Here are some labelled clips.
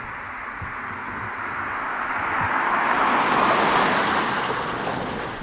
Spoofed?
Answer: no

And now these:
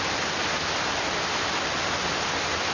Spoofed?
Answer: no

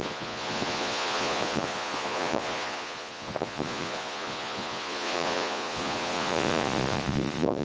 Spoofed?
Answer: yes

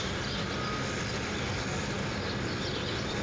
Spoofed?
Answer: no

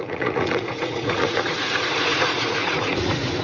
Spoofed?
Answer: yes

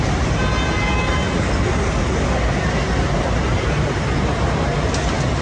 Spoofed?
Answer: no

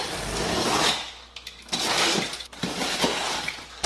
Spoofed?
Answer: no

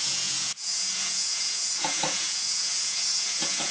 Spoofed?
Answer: yes